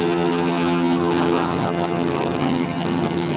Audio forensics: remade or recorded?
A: remade